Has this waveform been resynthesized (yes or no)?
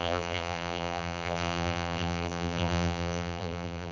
yes